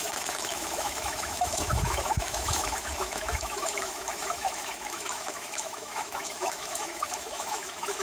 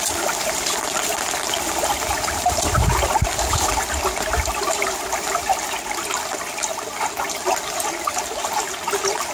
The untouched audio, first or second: second